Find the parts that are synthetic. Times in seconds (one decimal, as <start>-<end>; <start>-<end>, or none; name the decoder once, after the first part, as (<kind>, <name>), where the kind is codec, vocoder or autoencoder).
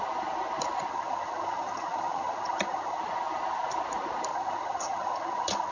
0.9-3.0 (vocoder, HiFi-GAN); 4.3-5.7